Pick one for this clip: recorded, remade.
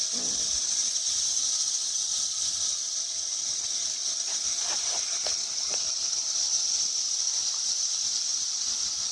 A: recorded